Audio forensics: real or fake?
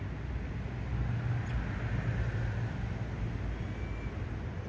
real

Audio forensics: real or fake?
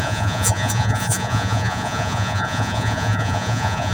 fake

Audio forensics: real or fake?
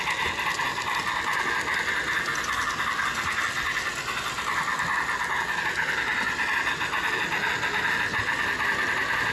real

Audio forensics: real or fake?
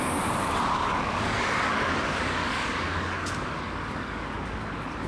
fake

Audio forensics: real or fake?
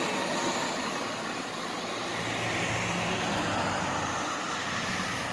real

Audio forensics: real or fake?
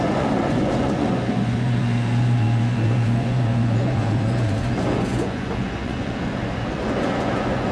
fake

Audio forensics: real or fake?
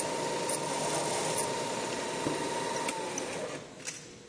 real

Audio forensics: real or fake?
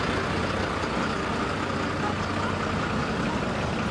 real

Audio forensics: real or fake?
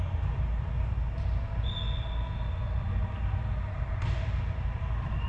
real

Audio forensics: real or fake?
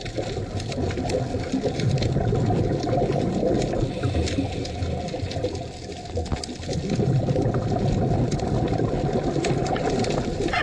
real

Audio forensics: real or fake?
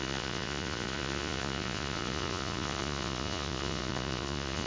fake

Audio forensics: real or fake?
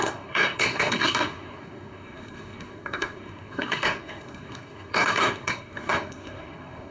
fake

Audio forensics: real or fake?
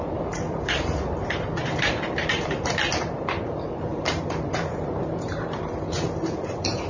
fake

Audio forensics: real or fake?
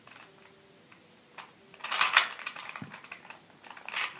real